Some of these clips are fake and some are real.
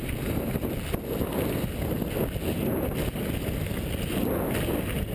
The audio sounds real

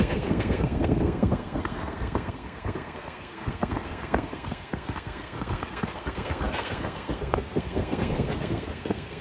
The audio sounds fake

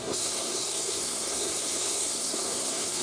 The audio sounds fake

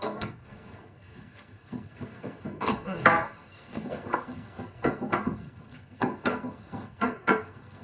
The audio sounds fake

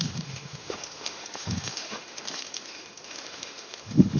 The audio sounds fake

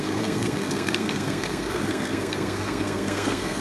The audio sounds fake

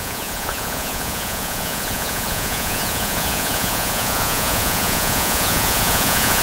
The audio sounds fake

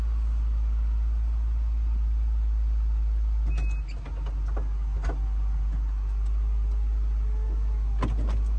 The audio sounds real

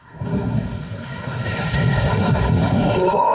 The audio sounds fake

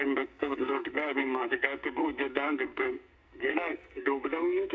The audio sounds fake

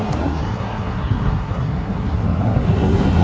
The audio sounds fake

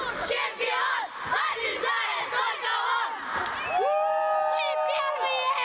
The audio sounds real